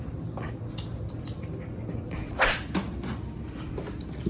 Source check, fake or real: real